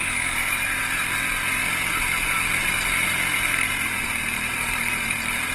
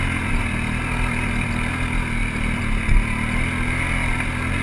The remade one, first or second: first